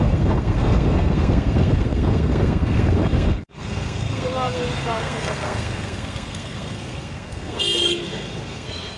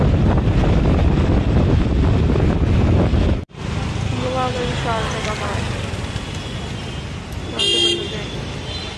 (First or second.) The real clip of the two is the second